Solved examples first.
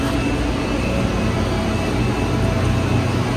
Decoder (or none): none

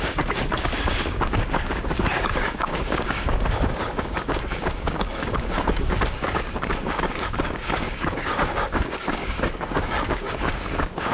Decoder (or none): codec, DAC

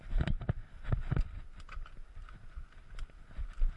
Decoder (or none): none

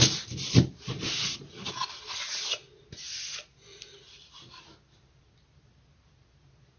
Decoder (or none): none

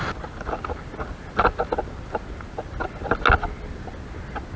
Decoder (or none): none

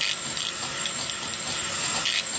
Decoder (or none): none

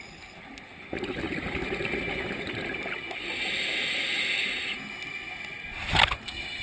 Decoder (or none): none